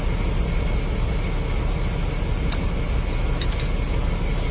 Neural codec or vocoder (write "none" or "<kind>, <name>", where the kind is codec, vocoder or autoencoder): none